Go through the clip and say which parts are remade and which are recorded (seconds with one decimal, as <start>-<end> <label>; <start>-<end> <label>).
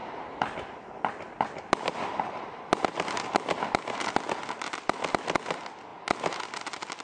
0.0-7.0 recorded